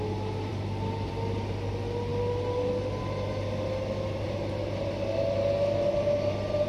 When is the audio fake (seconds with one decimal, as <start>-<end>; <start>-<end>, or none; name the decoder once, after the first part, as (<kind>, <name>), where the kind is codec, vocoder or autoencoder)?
none